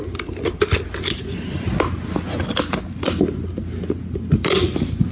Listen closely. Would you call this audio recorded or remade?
recorded